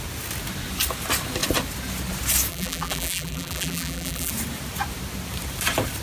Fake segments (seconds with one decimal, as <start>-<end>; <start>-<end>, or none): 2.5-4.3